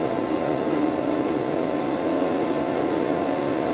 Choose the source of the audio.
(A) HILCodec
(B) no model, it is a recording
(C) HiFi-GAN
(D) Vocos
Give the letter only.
D